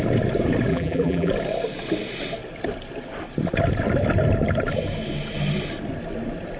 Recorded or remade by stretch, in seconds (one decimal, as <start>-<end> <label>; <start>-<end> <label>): 0.0-0.7 recorded; 0.7-1.3 remade; 1.3-6.6 recorded